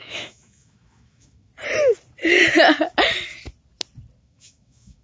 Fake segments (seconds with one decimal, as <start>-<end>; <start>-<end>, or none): 0.0-1.5; 4.2-5.0